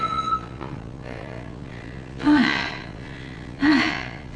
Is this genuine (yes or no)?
no